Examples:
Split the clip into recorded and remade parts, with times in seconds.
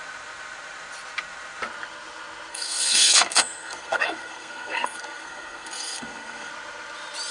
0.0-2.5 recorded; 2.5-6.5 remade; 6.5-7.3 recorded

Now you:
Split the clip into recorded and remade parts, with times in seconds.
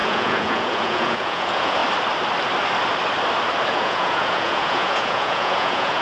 0.0-1.8 remade; 1.8-3.7 recorded; 3.7-6.0 remade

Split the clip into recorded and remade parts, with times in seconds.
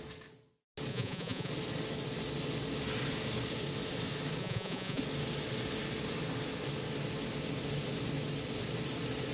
0.0-0.9 recorded; 0.9-1.5 remade; 1.5-4.4 recorded; 4.4-5.0 remade; 5.0-9.3 recorded